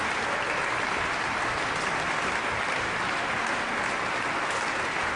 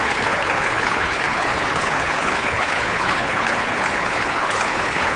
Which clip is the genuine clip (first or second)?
first